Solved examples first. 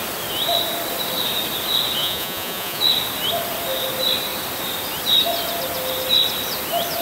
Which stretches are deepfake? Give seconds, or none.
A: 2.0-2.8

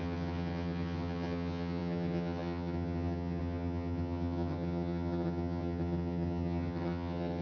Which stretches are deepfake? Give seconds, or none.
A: 0.0-7.4

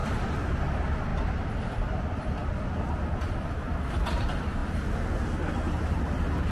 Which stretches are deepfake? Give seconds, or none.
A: 0.0-0.7

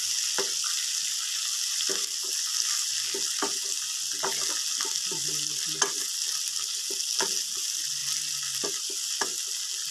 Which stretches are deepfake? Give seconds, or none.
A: none

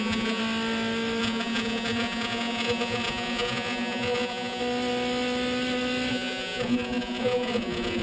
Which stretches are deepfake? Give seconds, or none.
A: 0.0-0.4; 1.2-4.6; 6.1-8.0

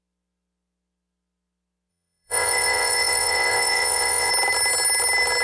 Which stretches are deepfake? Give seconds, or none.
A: 1.9-4.3

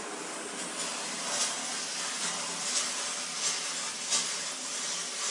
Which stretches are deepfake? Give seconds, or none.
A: none

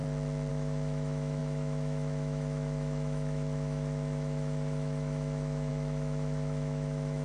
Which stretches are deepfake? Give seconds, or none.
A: 0.5-7.2